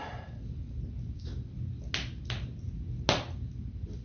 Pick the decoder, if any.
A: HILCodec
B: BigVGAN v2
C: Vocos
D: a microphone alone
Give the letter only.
D